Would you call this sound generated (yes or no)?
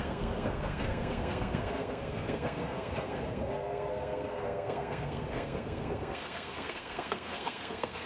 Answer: yes